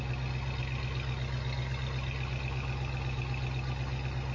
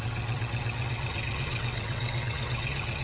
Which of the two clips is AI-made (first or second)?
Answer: second